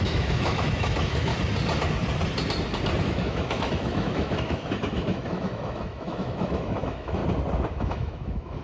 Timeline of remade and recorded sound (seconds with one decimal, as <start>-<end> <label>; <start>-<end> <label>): 0.0-1.3 remade; 1.3-3.0 recorded; 3.0-7.2 remade; 7.2-7.7 recorded; 7.7-8.6 remade